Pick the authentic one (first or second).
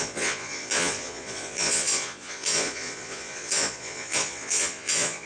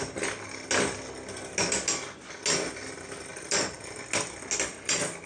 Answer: second